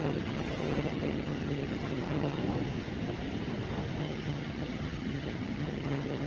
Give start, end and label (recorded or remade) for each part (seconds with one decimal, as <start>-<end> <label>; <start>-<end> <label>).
0.0-2.4 remade; 2.4-4.0 recorded; 4.0-6.3 remade